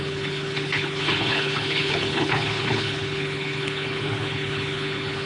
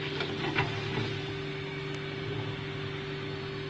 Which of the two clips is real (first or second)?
second